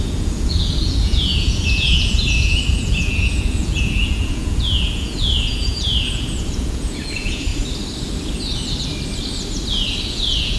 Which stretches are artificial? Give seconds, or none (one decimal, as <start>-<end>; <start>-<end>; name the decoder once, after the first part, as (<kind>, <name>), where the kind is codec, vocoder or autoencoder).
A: 0.0-7.5 (vocoder, Vocos); 10.1-10.6